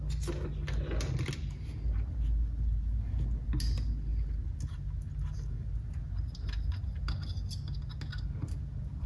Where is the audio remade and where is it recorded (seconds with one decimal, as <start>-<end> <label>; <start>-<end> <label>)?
0.0-9.1 recorded